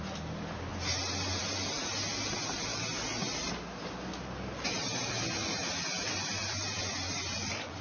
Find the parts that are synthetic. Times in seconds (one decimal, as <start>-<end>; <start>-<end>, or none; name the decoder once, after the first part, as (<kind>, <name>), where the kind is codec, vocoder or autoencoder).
0.7-1.4 (vocoder, BigVGAN v2); 6.4-7.8